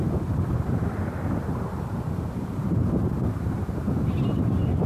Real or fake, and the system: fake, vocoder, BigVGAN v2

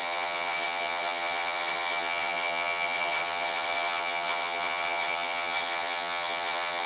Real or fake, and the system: fake, vocoder, HiFi-GAN